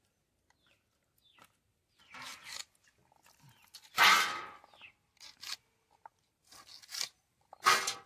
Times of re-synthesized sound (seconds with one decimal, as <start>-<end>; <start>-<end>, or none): none